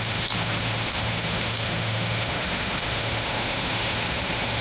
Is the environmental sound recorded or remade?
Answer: remade